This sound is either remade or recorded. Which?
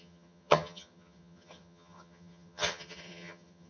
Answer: remade